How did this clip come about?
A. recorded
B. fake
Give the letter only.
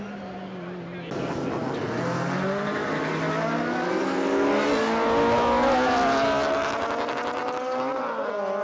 A